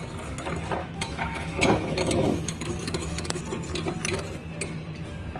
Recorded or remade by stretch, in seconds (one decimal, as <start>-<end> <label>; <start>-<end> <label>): 0.0-0.8 recorded; 0.8-3.4 remade; 3.4-5.4 recorded